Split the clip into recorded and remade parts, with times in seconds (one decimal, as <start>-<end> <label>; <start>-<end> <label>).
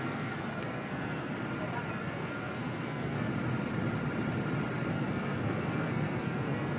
0.0-1.3 remade; 1.3-1.9 recorded; 1.9-3.3 remade; 3.3-4.9 recorded; 4.9-6.8 remade